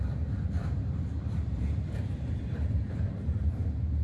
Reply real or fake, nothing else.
fake